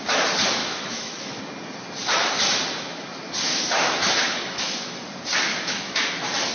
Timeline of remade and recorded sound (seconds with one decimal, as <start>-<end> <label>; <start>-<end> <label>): 0.0-0.6 recorded; 0.6-1.4 remade; 1.4-3.5 recorded; 3.5-5.0 remade; 5.0-5.5 recorded; 5.5-6.0 remade; 6.0-6.5 recorded